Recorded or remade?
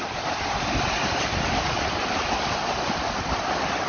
recorded